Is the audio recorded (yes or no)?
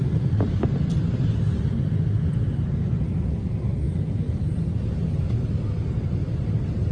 yes